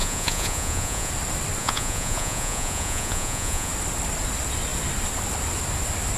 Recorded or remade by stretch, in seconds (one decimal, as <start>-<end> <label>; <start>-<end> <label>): 0.0-1.1 remade; 1.1-1.6 recorded; 1.6-3.7 remade; 3.7-6.2 recorded